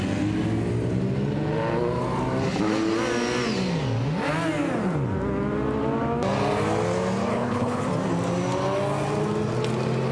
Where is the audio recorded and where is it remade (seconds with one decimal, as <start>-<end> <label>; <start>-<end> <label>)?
0.0-7.3 recorded; 7.3-7.8 remade; 7.8-10.1 recorded